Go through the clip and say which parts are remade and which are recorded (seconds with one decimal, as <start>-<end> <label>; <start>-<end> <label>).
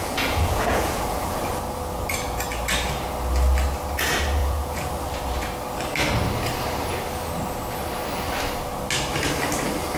0.0-1.4 remade; 1.4-4.4 recorded; 4.4-4.9 remade; 4.9-10.0 recorded